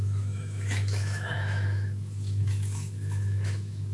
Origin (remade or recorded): remade